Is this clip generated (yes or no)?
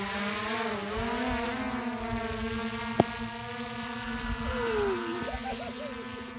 no